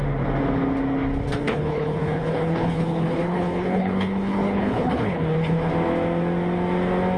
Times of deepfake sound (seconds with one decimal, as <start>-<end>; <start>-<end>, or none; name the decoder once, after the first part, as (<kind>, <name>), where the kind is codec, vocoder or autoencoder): 1.4-5.7 (codec, HILCodec)